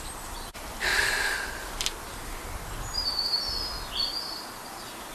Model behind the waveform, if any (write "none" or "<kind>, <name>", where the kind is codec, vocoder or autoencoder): none